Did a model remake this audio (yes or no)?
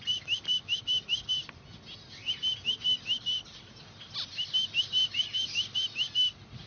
no